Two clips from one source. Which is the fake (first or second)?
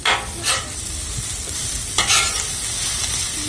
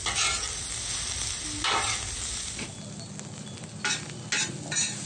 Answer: first